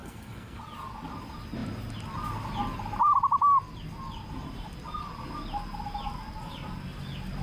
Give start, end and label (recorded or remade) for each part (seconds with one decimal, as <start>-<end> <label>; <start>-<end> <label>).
0.0-0.6 remade; 0.6-7.4 recorded